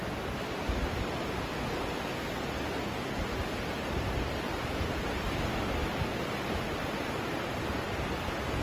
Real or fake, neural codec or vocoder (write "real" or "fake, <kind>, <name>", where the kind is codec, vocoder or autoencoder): real